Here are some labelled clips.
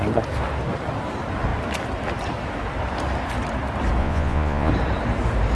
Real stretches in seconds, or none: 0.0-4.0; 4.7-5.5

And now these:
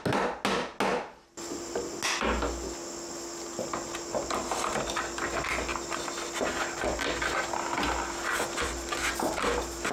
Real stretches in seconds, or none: 0.0-9.9

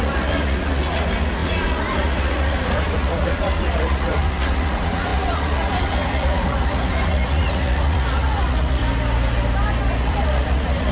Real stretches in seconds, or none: 8.8-10.0

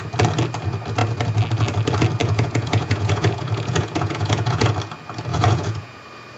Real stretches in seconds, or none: 0.0-2.2; 4.7-5.3; 6.0-6.4